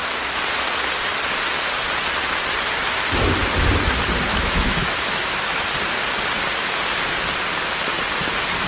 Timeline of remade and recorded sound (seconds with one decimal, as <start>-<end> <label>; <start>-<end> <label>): 0.0-4.3 recorded; 4.3-5.6 remade; 5.6-8.7 recorded